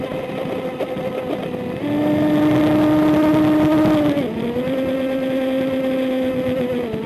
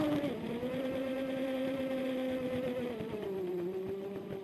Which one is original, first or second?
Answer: first